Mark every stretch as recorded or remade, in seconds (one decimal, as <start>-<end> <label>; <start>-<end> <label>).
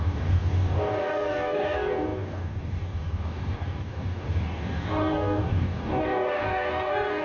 0.0-7.2 remade